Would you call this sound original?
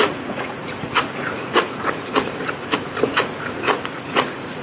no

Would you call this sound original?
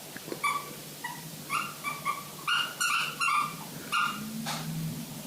yes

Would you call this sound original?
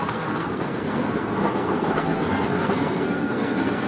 no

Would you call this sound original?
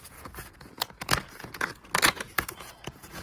no